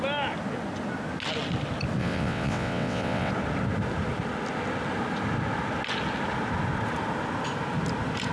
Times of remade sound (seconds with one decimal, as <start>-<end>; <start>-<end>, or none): 2.0-3.3